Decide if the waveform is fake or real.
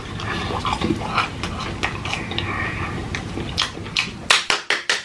real